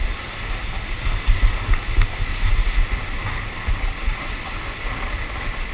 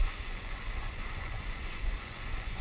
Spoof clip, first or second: second